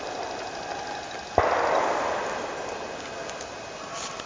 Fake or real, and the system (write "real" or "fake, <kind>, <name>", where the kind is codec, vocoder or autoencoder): real